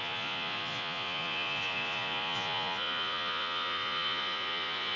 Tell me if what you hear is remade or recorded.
remade